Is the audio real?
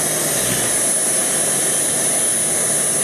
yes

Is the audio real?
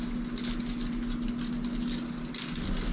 yes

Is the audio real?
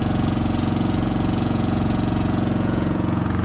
no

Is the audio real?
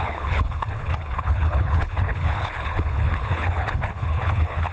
no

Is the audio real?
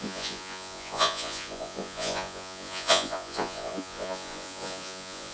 no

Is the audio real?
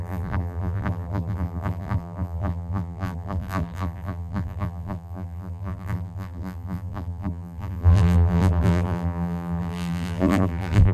no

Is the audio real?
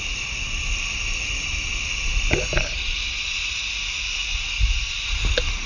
yes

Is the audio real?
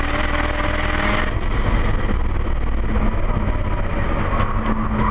yes